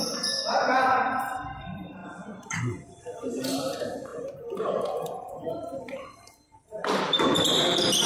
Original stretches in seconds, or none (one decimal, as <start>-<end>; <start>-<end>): 0.0-1.1